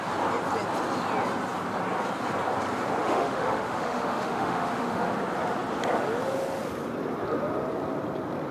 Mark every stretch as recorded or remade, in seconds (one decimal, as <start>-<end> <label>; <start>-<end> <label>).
0.0-3.0 recorded; 3.0-5.1 remade; 5.1-8.5 recorded